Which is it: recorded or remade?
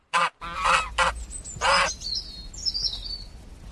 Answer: recorded